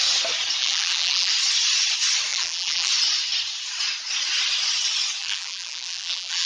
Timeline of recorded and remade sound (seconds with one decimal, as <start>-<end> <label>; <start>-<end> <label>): 0.0-0.6 recorded; 0.6-1.3 remade; 1.3-2.3 recorded; 2.3-2.9 remade; 2.9-5.2 recorded; 5.2-6.5 remade